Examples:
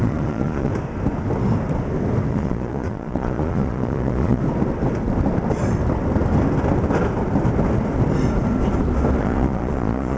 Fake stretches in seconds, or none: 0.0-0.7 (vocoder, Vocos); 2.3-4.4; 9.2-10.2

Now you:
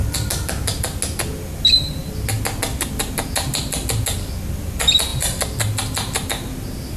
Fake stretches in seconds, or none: 0.0-0.8 (vocoder, BigVGAN v2)

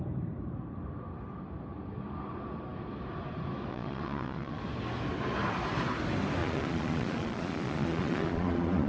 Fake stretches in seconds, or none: 3.7-4.6 (vocoder, Vocos); 6.4-8.9